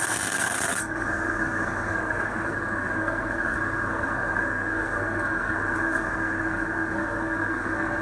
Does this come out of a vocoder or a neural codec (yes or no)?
yes